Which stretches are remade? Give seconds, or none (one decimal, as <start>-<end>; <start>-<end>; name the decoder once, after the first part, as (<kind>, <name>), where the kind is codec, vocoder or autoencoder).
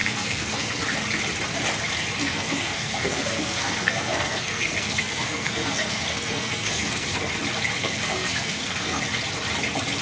0.0-0.8 (codec, SNAC); 2.2-7.3; 7.8-9.0